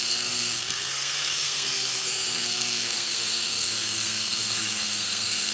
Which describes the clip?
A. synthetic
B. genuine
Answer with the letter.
A